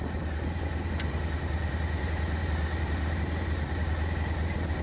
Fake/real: real